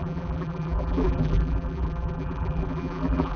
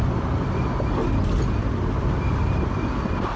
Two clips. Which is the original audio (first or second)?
second